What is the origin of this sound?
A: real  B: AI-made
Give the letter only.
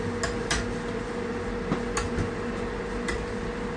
A